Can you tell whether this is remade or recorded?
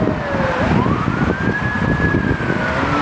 recorded